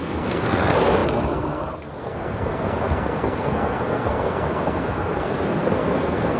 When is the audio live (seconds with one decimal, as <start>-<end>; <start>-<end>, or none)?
none